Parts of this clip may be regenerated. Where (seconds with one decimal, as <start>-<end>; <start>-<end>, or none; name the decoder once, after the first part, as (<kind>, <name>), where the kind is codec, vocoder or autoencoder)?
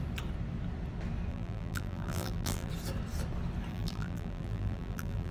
1.3-2.7 (vocoder, BigVGAN v2); 3.7-5.3